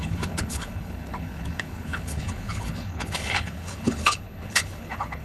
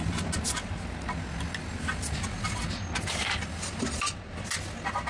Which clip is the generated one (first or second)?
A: first